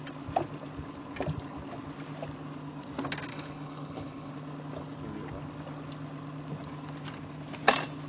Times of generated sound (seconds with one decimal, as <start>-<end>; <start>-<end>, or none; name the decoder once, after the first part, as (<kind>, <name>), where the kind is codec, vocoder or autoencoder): 3.3-4.3 (codec, HILCodec)